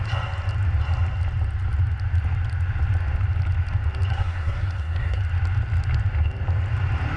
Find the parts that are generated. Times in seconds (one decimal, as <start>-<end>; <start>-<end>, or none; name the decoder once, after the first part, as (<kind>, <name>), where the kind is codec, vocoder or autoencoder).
4.1-5.2 (codec, SNAC)